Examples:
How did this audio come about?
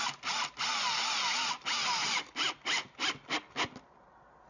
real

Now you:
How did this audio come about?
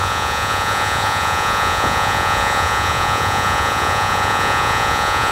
fake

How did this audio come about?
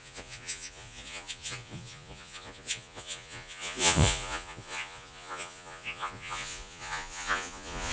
fake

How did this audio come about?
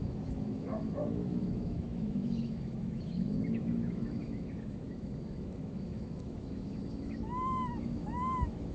fake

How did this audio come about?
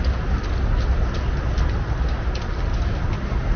real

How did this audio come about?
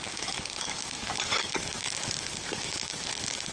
fake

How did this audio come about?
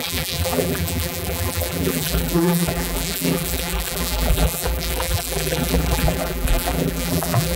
fake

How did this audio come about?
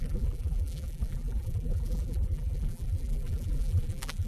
fake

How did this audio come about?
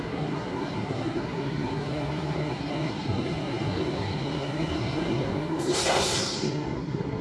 fake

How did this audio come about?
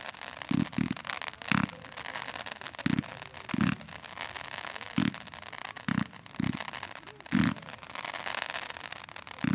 real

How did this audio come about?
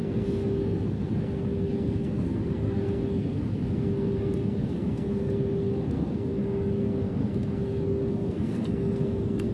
fake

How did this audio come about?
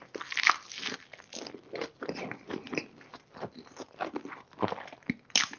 real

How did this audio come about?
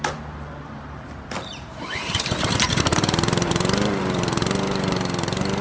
fake